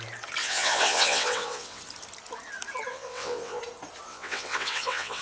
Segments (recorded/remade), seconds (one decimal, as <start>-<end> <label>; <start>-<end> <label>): 0.0-0.4 recorded; 0.4-1.8 remade; 1.8-2.9 recorded; 2.9-3.6 remade; 3.6-4.1 recorded; 4.1-5.2 remade